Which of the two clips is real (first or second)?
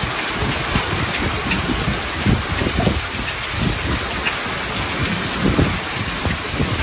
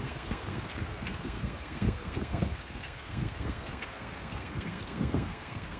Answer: first